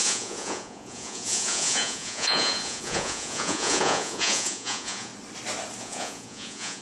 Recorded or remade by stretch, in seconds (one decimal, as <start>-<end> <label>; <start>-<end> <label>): 0.0-5.1 remade; 5.1-5.8 recorded; 5.8-6.8 remade